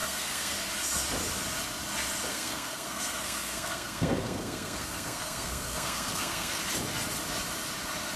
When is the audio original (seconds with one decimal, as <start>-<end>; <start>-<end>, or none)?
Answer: 0.7-2.3; 6.6-8.2